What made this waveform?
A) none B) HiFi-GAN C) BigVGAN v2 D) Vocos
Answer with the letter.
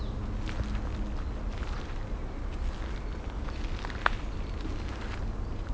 A